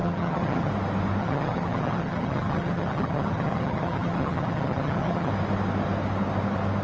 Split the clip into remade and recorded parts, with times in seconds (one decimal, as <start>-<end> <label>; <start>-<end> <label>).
0.0-0.7 remade; 0.7-1.2 recorded; 1.2-5.3 remade; 5.3-6.8 recorded